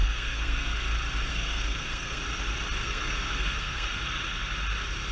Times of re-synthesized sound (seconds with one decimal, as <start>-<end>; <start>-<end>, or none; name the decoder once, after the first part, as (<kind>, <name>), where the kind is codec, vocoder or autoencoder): 0.0-0.8 (codec, SNAC); 1.3-2.2; 2.8-4.0